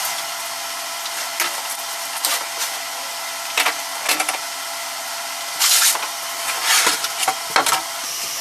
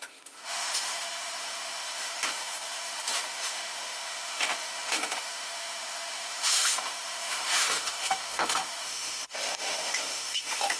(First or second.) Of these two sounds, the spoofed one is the second